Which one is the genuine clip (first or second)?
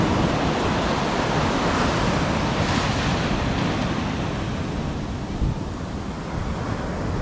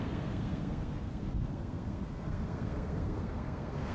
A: first